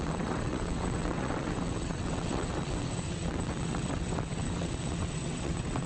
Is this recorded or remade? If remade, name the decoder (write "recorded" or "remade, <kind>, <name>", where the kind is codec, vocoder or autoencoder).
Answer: remade, vocoder, WaveNeXt